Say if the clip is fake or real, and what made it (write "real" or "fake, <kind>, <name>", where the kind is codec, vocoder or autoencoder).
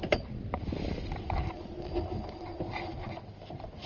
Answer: real